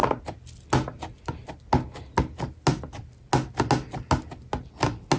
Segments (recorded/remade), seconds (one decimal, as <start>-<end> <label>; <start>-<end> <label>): 0.0-5.2 recorded